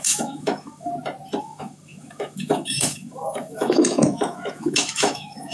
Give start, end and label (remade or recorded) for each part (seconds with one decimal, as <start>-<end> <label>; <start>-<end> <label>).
0.0-0.9 remade; 0.9-1.4 recorded; 1.4-5.5 remade